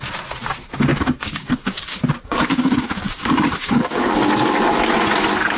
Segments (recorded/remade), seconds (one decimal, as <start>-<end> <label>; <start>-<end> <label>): 0.0-0.9 recorded; 0.9-4.2 remade; 4.2-5.6 recorded